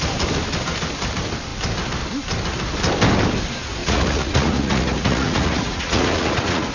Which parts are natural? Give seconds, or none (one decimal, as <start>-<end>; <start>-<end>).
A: 0.0-3.8